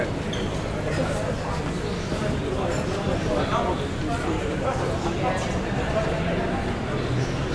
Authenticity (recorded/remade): recorded